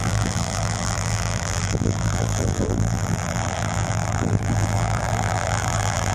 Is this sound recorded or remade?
remade